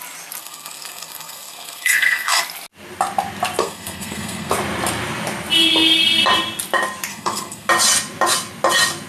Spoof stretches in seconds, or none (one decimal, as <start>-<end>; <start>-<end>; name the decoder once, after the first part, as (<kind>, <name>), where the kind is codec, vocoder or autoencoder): 0.4-2.4 (codec, SNAC); 3.6-4.5; 7.1-7.7